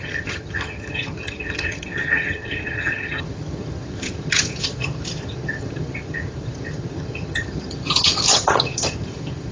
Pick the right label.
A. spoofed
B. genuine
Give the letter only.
A